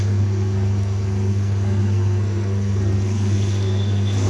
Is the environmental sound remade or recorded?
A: remade